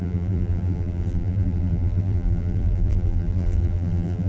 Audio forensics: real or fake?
fake